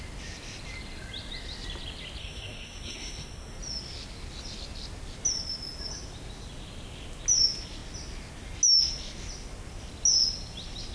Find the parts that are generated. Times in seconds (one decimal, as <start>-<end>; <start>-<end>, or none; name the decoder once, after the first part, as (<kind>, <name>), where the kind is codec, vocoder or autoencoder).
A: 2.2-3.6 (codec, SNAC)